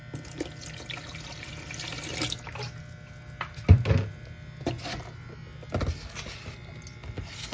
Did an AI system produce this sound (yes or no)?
no